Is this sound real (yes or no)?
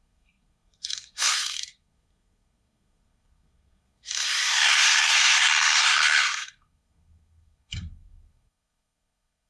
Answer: no